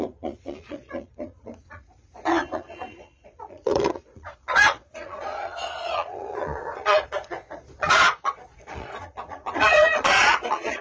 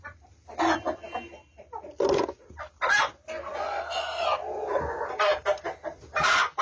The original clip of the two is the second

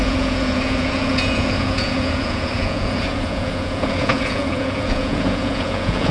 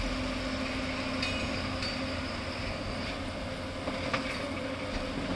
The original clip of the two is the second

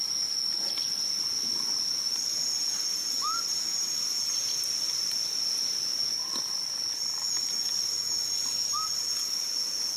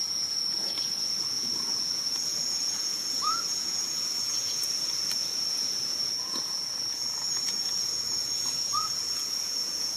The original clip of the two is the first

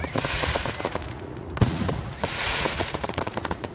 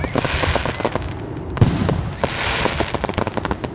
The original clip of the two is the second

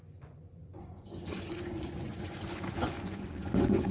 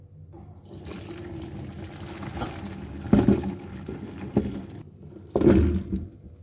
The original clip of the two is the second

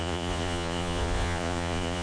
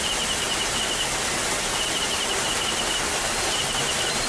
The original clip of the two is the second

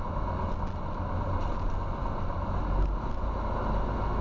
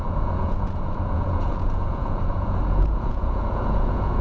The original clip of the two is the first